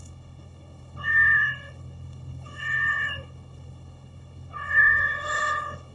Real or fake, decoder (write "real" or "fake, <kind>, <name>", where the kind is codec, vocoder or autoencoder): fake, codec, HILCodec